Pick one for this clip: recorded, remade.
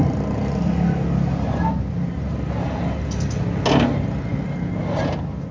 recorded